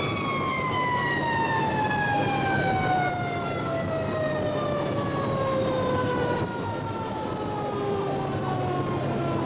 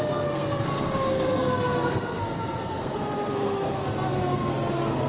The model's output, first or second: second